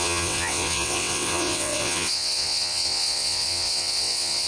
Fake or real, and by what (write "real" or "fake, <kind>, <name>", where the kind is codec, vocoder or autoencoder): fake, vocoder, WaveNeXt